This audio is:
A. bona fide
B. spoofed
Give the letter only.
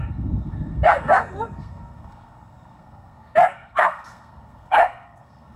B